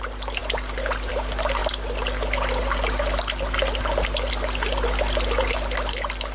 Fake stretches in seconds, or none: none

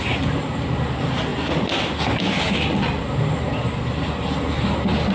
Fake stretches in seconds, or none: none